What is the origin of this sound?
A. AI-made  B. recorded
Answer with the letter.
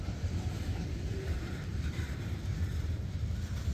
A